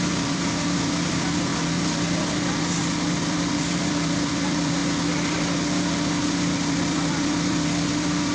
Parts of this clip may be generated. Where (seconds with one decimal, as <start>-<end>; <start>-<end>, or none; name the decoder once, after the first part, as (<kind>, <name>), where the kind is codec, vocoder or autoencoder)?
0.0-1.5 (vocoder, BigVGAN v2); 3.3-4.8; 6.2-8.3